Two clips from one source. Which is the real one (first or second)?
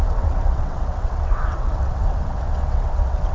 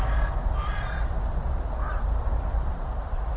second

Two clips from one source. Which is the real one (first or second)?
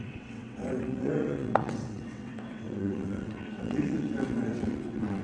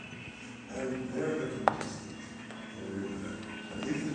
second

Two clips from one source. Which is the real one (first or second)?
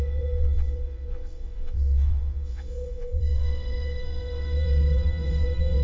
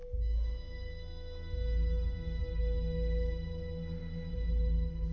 second